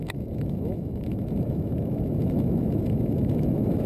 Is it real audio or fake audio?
fake